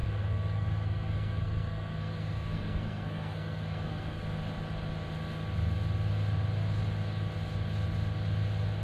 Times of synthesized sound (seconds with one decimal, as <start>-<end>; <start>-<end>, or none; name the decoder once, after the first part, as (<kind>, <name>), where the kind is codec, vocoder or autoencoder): 0.0-4.2 (codec, SNAC)